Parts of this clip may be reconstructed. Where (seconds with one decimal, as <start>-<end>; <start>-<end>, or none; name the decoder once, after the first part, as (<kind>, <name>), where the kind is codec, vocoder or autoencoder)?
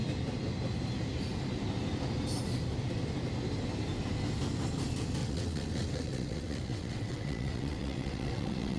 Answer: 5.2-8.8 (vocoder, WaveNeXt)